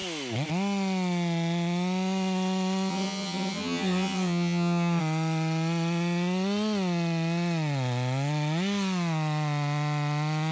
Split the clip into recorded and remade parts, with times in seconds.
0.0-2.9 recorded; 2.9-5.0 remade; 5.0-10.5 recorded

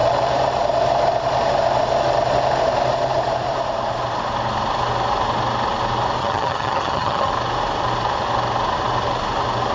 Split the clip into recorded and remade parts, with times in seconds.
0.0-6.2 recorded; 6.2-7.3 remade; 7.3-9.7 recorded